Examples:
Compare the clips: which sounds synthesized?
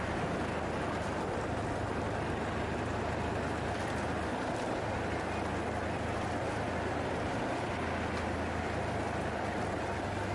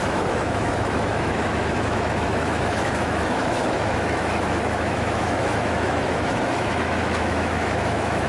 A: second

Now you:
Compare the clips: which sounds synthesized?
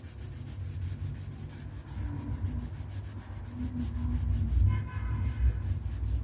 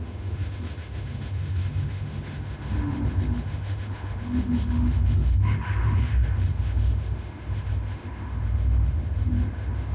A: second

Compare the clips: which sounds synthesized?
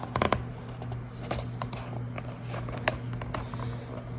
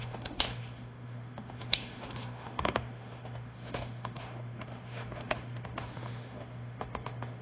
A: second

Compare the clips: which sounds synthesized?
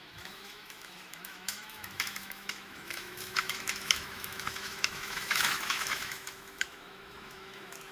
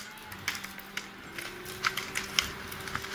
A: first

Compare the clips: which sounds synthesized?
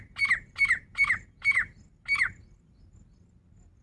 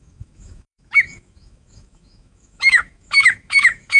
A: second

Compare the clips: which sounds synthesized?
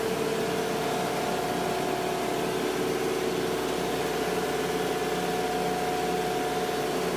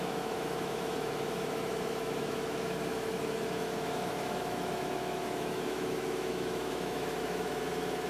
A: second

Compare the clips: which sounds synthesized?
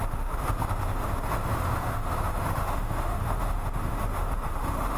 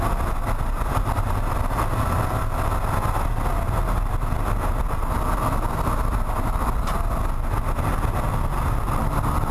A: first